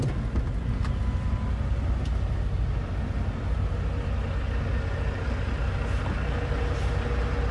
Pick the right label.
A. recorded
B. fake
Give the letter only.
A